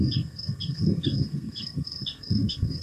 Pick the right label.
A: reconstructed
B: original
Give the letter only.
A